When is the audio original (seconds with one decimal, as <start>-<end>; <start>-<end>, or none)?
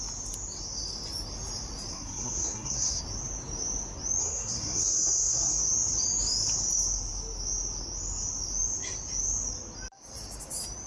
0.0-1.9; 3.0-4.2; 5.6-10.9